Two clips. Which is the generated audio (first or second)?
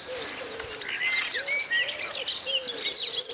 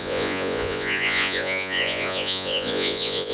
second